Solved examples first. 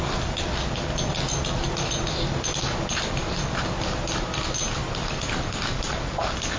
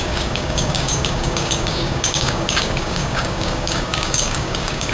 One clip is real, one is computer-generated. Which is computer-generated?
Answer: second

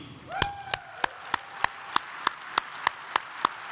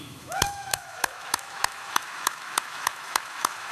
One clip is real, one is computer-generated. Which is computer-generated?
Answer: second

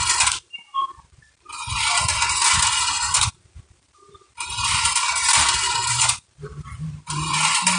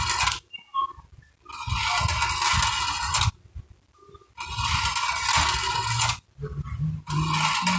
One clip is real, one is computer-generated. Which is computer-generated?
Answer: first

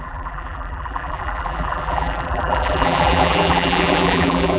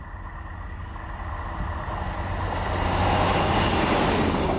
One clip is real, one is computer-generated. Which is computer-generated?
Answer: first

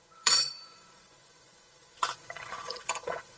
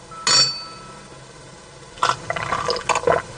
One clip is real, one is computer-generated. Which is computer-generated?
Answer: first